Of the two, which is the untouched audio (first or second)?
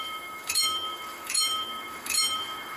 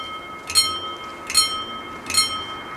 second